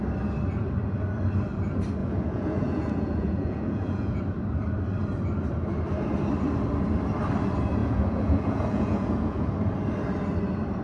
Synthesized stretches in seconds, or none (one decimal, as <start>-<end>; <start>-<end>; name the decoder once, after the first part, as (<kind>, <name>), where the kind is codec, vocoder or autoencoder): 2.0-4.2 (vocoder, Vocos); 7.8-9.5